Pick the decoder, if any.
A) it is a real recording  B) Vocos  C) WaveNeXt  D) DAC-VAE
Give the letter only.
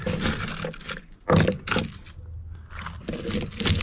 A